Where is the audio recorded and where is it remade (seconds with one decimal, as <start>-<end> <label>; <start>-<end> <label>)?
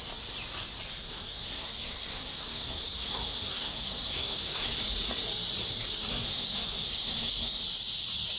0.0-0.9 recorded; 0.9-4.8 remade; 4.8-6.1 recorded; 6.1-7.6 remade; 7.6-8.4 recorded